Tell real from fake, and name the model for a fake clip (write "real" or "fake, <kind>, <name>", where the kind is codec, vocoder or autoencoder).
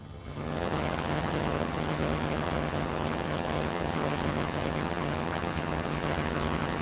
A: fake, vocoder, HiFi-GAN